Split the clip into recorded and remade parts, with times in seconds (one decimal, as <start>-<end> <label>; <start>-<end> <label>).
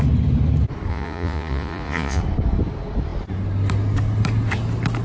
0.0-0.9 recorded; 0.9-2.2 remade; 2.2-5.0 recorded